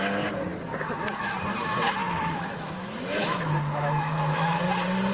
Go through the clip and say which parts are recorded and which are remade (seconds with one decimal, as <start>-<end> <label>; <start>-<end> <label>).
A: 0.0-2.0 recorded; 2.0-4.6 remade; 4.6-5.1 recorded